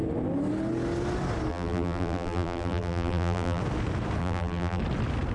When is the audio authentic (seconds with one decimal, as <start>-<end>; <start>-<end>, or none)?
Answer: 0.0-1.5; 3.6-4.2; 4.8-5.3